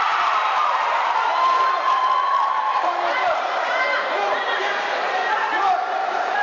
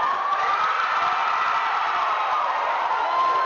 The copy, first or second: first